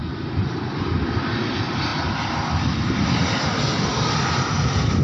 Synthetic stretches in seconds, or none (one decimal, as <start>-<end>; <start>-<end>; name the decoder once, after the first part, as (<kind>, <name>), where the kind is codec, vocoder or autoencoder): 0.0-0.9 (vocoder, BigVGAN v2); 3.9-4.5

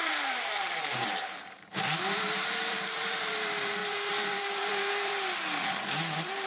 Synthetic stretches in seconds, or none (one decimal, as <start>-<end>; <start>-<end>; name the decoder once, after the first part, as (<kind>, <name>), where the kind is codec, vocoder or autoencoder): 0.0-5.1 (vocoder, BigVGAN v2); 5.8-6.5

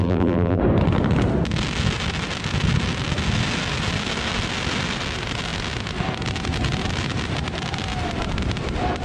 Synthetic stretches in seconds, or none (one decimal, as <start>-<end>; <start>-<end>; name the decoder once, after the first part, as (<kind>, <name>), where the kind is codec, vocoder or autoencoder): 0.0-0.6 (vocoder, BigVGAN v2)

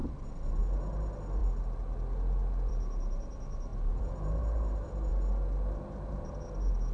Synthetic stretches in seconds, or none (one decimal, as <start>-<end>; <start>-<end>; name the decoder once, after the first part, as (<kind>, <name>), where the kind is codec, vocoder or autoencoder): 3.7-5.1 (vocoder, BigVGAN v2)

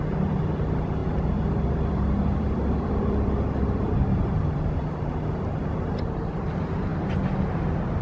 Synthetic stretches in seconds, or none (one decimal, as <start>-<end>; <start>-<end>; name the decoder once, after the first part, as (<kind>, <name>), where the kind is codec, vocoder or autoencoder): 1.0-5.3 (vocoder, BigVGAN v2); 6.9-8.0